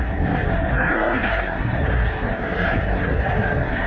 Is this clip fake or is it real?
fake